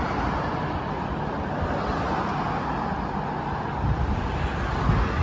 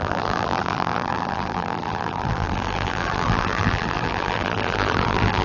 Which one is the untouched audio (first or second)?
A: first